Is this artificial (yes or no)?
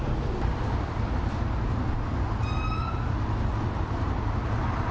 no